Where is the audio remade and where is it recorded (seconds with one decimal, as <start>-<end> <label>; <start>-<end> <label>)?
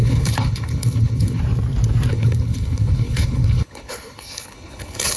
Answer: 0.0-1.4 remade; 1.4-2.1 recorded; 2.1-5.2 remade